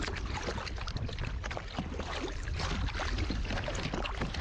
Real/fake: real